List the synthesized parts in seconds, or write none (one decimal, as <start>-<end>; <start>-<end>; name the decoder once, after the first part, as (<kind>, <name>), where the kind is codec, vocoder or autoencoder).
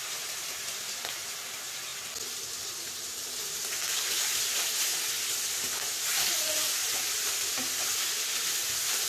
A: none